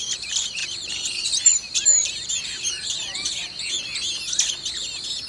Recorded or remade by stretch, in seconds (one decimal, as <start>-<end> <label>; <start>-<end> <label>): 0.0-3.4 remade; 3.4-5.3 recorded